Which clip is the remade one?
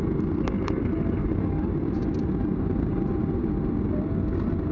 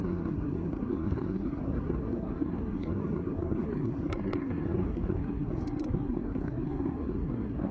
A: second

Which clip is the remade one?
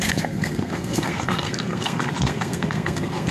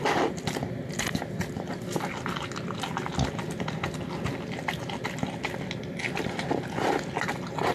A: first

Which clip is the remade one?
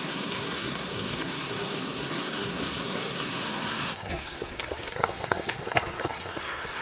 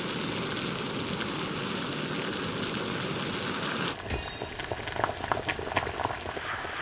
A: first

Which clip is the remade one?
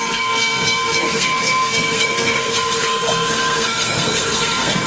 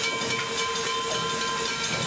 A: first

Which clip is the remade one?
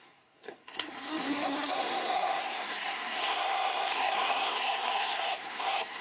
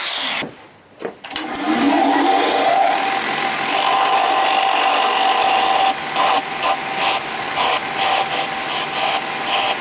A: first